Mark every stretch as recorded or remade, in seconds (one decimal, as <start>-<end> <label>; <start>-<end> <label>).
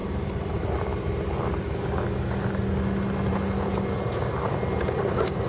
0.0-5.5 recorded